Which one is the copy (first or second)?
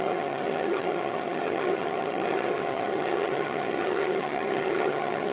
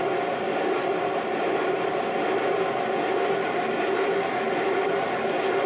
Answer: first